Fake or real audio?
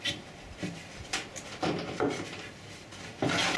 fake